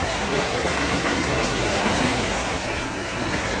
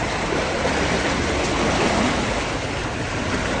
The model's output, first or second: first